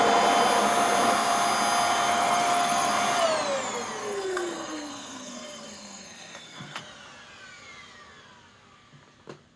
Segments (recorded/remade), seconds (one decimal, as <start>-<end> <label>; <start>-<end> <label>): 0.0-2.1 recorded; 2.1-2.9 remade; 2.9-4.0 recorded; 4.0-6.8 remade; 6.8-9.6 recorded